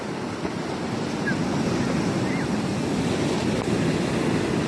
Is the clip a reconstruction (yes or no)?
no